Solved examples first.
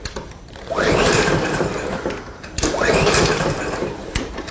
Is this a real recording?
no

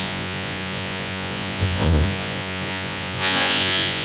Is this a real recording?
no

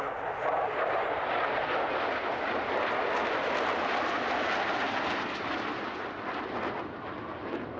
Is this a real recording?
yes